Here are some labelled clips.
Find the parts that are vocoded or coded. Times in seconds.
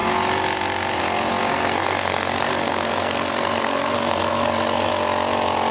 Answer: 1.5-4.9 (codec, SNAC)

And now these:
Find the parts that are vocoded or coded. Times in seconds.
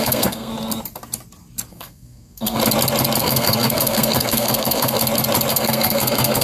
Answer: 0.0-0.5 (codec, SNAC); 1.7-2.6; 3.2-5.0; 5.5-6.4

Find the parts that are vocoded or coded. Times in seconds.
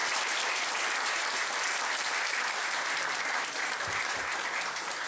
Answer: 3.1-5.1 (vocoder, BigVGAN v2)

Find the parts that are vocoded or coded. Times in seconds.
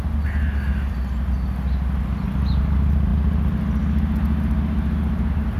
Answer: none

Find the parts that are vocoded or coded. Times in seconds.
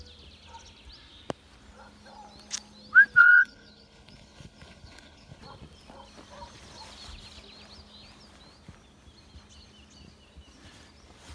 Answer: 3.2-5.4 (codec, HILCodec)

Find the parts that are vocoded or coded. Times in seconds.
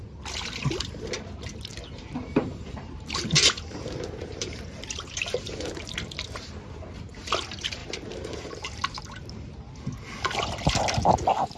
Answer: 1.7-5.7 (vocoder, BigVGAN v2); 7.8-9.0